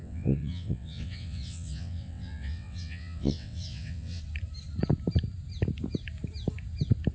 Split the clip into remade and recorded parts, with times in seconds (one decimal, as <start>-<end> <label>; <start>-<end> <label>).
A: 0.0-4.2 remade; 4.2-7.1 recorded